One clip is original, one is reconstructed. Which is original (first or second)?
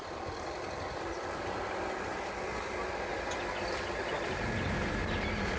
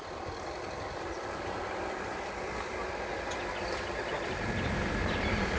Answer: first